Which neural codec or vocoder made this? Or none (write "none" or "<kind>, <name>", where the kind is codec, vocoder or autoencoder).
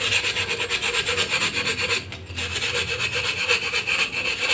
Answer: none